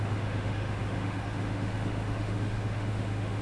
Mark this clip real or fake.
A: fake